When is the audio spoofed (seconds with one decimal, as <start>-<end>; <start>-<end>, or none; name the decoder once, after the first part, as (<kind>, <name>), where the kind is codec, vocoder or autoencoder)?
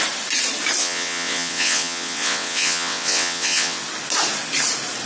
0.8-3.8 (vocoder, WaveNeXt)